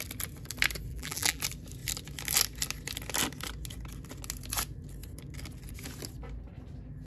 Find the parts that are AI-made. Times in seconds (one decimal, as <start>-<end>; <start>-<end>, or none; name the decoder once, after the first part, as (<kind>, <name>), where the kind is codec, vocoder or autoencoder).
0.9-1.4 (vocoder, BigVGAN v2)